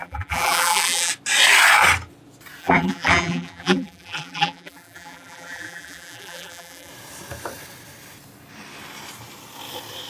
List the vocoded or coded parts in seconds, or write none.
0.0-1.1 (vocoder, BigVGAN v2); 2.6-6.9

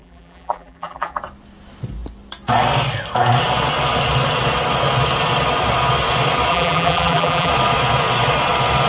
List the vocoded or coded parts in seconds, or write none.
0.0-1.2 (vocoder, BigVGAN v2); 6.5-7.5

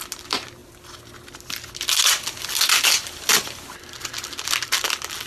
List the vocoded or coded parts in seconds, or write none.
none

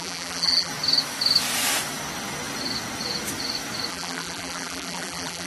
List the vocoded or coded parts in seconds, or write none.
0.0-0.7 (vocoder, BigVGAN v2); 3.9-5.5

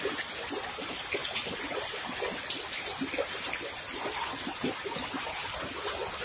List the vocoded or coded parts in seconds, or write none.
1.2-4.9 (vocoder, BigVGAN v2)